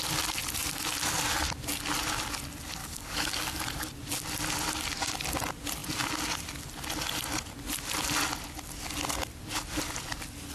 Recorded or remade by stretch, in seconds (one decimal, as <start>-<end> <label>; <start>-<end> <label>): 0.0-2.8 recorded; 2.8-3.6 remade; 3.6-10.5 recorded